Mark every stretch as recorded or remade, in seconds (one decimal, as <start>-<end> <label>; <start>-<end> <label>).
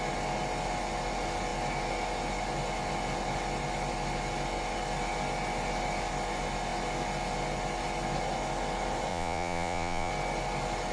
0.0-9.1 recorded; 9.1-10.1 remade; 10.1-10.9 recorded